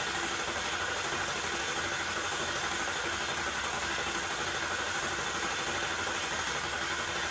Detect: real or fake real